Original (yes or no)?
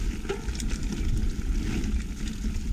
yes